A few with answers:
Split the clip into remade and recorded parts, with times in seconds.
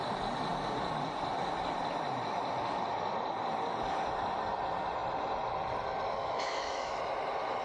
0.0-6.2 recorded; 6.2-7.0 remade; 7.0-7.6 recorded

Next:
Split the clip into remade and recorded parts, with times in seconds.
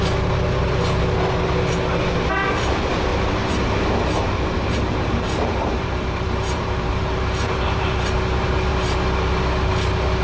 0.0-3.1 recorded; 3.1-8.1 remade; 8.1-8.7 recorded; 8.7-9.2 remade; 9.2-10.2 recorded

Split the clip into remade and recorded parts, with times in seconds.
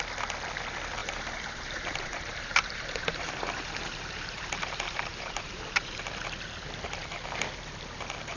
0.0-1.0 recorded; 1.0-6.0 remade; 6.0-8.4 recorded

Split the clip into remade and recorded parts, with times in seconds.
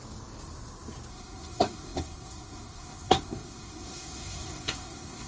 0.0-1.1 recorded; 1.1-5.3 remade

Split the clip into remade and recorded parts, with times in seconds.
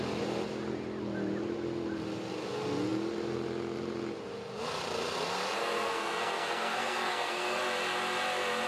0.0-5.6 recorded; 5.6-7.6 remade; 7.6-8.7 recorded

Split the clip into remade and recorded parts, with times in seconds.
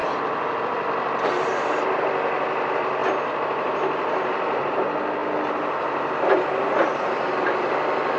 0.0-8.2 recorded